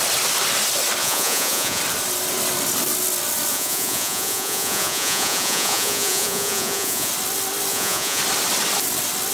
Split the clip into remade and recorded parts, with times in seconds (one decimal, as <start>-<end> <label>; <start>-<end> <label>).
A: 0.0-1.0 recorded; 1.0-1.8 remade; 1.8-3.5 recorded; 3.5-7.1 remade; 7.1-7.7 recorded; 7.7-8.2 remade; 8.2-9.3 recorded

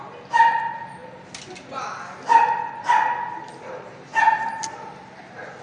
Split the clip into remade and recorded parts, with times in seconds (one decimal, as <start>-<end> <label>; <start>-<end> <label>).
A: 0.0-5.6 recorded

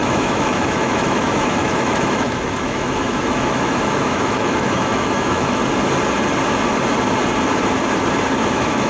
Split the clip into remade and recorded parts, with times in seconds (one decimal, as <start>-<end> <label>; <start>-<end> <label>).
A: 0.0-5.6 remade; 5.6-8.5 recorded; 8.5-8.9 remade

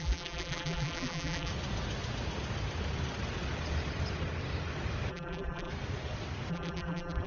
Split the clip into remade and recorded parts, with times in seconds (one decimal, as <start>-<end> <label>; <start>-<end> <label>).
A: 0.0-1.5 remade; 1.5-5.1 recorded; 5.1-5.7 remade; 5.7-6.5 recorded; 6.5-7.3 remade

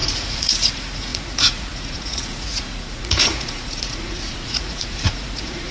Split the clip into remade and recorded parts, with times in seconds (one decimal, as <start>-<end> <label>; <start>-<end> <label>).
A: 0.0-5.7 remade